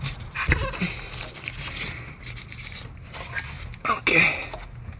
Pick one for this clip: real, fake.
real